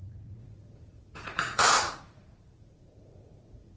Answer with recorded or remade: remade